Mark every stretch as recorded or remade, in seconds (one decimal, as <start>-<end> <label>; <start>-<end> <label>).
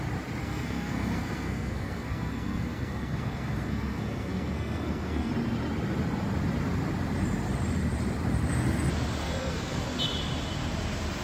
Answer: 0.0-0.4 recorded; 0.4-5.3 remade; 5.3-9.2 recorded; 9.2-9.8 remade; 9.8-11.2 recorded